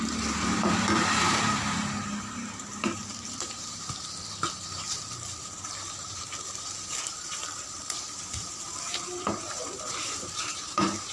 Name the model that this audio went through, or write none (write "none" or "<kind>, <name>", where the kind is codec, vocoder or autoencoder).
vocoder, BigVGAN v2